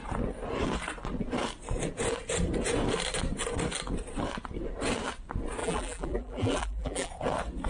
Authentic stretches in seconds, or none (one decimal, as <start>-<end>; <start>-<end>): 0.0-5.6; 7.1-7.7